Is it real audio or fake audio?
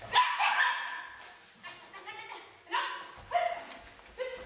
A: real